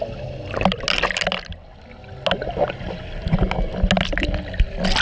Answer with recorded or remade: recorded